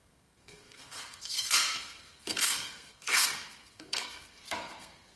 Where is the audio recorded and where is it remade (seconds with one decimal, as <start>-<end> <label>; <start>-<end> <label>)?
0.0-5.2 remade